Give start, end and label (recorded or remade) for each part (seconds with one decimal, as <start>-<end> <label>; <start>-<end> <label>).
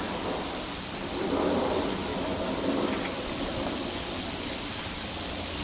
0.0-5.6 recorded